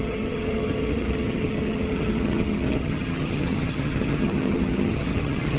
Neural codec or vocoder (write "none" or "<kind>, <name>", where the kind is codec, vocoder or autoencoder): vocoder, HiFi-GAN